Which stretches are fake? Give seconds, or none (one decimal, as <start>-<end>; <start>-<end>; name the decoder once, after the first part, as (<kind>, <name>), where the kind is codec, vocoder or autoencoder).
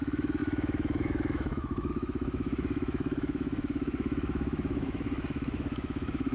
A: 0.0-6.3 (autoencoder, DAC-VAE)